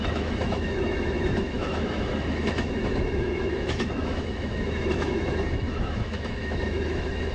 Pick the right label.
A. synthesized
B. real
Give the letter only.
A